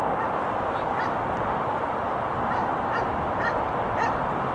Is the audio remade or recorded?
recorded